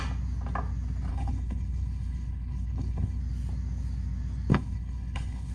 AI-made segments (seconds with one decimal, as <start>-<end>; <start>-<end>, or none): 1.1-3.2; 4.5-5.5